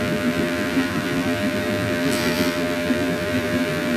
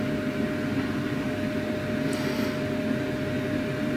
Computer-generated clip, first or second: first